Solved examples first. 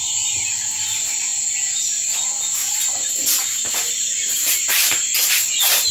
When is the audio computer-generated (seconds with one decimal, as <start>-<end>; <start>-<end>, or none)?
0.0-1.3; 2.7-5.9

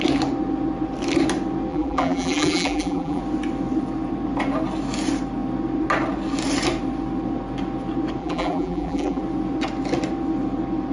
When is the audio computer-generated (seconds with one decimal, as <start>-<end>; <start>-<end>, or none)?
1.7-3.2; 8.2-9.2

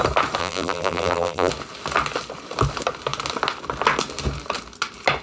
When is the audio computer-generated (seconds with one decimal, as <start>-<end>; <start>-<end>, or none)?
0.4-1.5